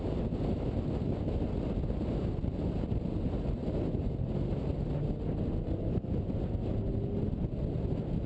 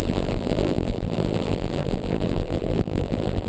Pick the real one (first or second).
first